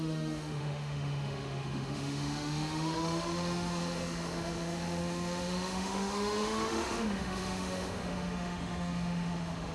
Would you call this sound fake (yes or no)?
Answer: yes